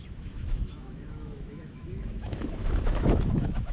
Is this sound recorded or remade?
remade